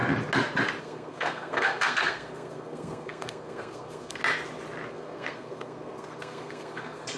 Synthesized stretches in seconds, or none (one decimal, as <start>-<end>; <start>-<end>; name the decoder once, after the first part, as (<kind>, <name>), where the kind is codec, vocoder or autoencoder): 0.8-4.2 (codec, SNAC); 4.9-7.2